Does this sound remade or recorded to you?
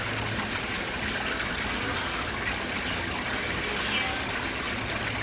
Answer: recorded